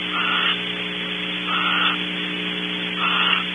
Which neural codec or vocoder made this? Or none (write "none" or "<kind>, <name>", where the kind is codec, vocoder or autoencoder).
none